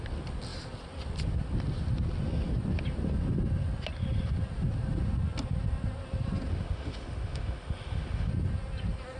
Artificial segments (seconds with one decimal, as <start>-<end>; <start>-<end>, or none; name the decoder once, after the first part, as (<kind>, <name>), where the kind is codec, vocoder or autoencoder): 6.5-8.3 (autoencoder, DAC-VAE)